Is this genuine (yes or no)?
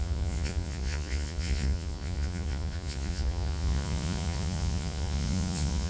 no